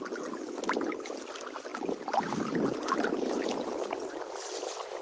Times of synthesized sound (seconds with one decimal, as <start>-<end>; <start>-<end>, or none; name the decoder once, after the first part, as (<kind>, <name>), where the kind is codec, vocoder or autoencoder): none

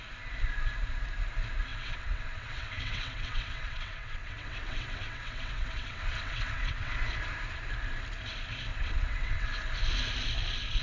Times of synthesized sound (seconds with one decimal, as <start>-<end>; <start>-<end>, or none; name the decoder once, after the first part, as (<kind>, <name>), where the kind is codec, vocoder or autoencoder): 1.7-6.9 (vocoder, WaveNeXt); 8.7-9.6

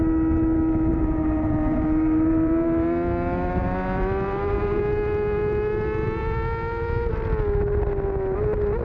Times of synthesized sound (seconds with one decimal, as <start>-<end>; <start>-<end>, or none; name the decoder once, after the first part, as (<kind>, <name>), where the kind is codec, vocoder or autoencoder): 0.9-4.8 (vocoder, BigVGAN v2)